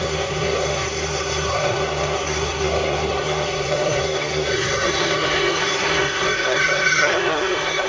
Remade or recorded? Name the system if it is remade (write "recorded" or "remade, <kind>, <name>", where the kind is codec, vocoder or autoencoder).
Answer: remade, codec, SNAC